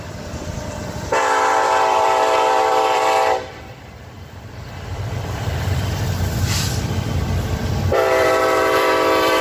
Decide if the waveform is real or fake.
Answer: fake